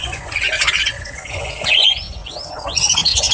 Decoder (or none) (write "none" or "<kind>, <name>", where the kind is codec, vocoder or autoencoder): vocoder, Vocos